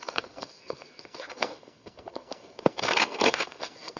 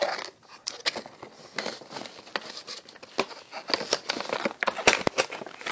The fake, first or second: first